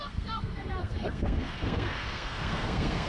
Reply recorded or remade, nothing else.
remade